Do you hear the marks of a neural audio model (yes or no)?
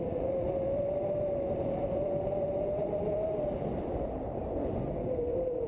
no